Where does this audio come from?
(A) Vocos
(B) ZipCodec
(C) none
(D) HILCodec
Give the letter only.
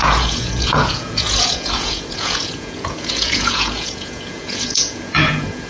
A